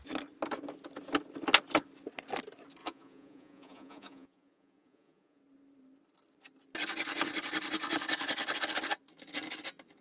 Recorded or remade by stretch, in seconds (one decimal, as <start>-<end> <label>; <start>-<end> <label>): 0.0-2.8 recorded; 2.8-5.4 remade; 5.4-10.0 recorded